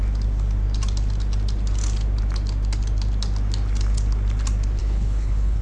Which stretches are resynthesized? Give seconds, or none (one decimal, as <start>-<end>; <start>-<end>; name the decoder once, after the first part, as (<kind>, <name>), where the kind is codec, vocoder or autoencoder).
4.8-5.6 (codec, HILCodec)